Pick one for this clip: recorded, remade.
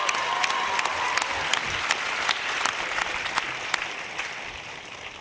recorded